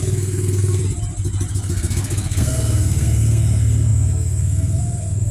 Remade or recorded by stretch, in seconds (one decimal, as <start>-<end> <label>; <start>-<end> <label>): 0.0-0.8 remade; 0.8-1.5 recorded; 1.5-5.3 remade